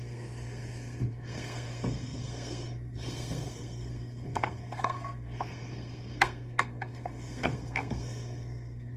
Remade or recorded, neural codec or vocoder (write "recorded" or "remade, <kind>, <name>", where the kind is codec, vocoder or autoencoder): remade, codec, SNAC